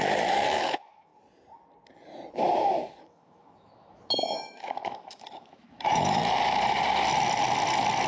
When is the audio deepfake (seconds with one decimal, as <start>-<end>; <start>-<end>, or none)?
0.0-1.1; 3.0-6.2